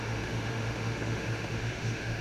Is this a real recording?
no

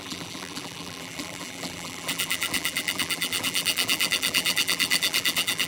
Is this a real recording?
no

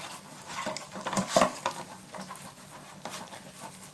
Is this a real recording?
yes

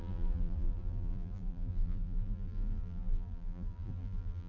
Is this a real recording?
no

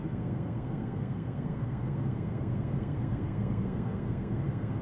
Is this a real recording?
no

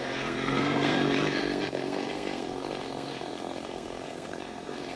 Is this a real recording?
no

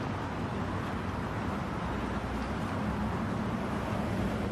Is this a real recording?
yes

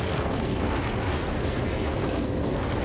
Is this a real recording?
no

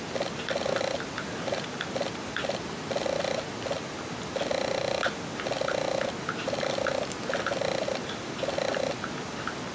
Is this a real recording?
yes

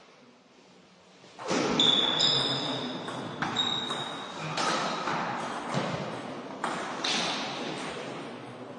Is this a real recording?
yes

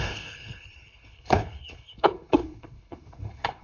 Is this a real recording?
no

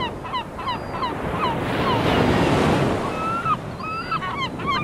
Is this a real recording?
yes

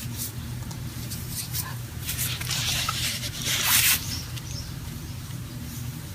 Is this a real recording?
no